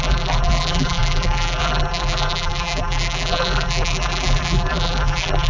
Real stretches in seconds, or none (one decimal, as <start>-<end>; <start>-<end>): none